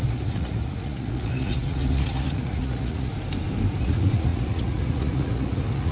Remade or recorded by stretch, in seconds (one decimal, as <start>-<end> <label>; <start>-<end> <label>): 0.0-3.1 remade; 3.1-3.8 recorded; 3.8-5.9 remade